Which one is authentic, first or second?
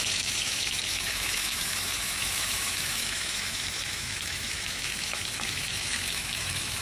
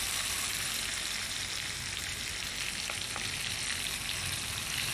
second